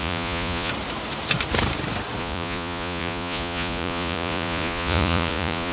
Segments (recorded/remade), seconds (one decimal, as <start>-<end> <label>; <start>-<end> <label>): 0.0-0.7 remade; 0.7-2.2 recorded; 2.2-5.7 remade